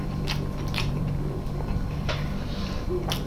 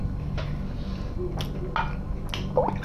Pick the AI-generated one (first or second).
first